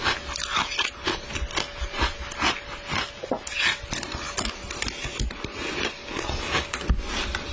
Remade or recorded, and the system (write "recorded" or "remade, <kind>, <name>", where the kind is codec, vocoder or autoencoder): recorded